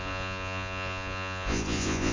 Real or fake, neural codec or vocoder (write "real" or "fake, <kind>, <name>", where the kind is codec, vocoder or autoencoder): fake, vocoder, Vocos